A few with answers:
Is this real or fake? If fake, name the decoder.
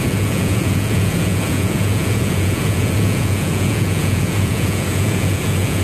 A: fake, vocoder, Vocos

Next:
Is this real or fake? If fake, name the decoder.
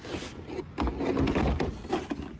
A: real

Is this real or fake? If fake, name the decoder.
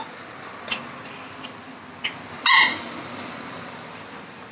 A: real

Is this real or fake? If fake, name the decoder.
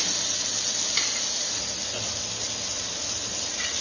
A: real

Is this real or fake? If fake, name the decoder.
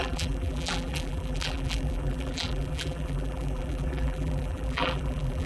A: fake, vocoder, BigVGAN v2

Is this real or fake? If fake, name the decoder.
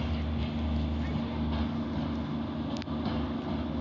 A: real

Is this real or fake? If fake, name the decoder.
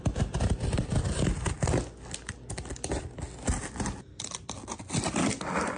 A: real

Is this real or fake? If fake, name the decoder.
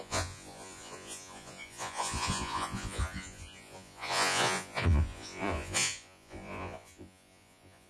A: fake, vocoder, Vocos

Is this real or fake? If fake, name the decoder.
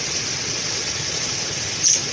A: real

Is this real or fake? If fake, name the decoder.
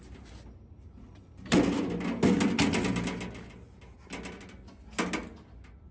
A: real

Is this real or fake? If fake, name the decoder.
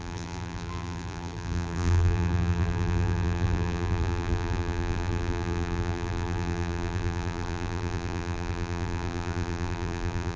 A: fake, vocoder, BigVGAN v2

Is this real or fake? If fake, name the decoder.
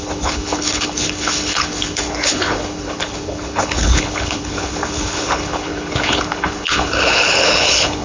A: fake, codec, HILCodec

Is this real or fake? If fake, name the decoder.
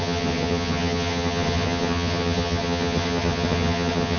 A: fake, vocoder, HiFi-GAN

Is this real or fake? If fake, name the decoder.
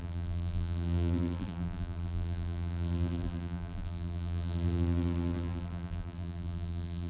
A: fake, vocoder, BigVGAN v2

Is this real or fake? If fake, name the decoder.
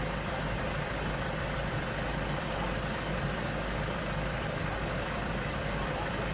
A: fake, vocoder, BigVGAN v2